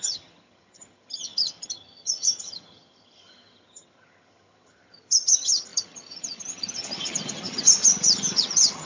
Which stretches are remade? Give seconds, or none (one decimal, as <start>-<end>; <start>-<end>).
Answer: 0.0-8.9